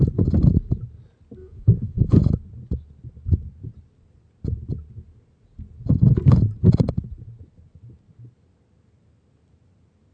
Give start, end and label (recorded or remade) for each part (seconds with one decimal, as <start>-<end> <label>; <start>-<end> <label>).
0.0-1.4 recorded; 1.4-2.2 remade; 2.2-10.1 recorded